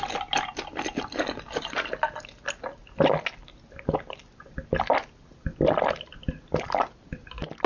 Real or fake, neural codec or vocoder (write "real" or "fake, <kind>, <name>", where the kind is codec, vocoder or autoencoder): real